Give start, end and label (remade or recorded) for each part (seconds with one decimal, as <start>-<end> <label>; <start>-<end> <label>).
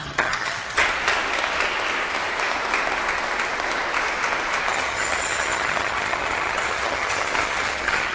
0.0-0.8 remade; 0.8-4.7 recorded; 4.7-8.1 remade